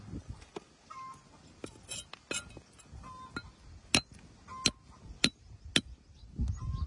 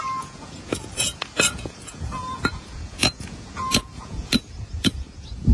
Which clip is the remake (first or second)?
second